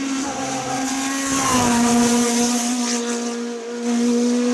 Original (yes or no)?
yes